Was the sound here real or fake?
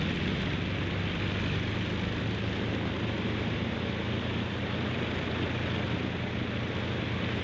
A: real